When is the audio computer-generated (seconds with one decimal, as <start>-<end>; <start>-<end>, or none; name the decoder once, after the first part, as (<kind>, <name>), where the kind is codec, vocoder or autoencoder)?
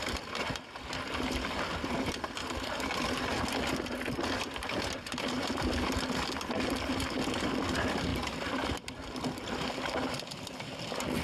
none